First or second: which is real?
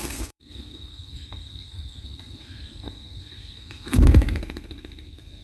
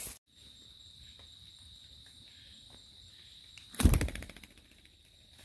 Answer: second